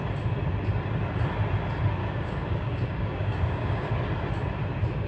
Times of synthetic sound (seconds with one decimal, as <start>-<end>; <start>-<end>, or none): 2.0-3.9